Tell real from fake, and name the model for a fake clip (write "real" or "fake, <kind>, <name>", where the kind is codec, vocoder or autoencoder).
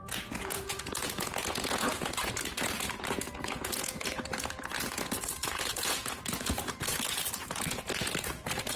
fake, vocoder, Vocos